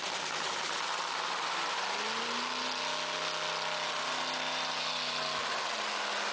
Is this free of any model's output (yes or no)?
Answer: yes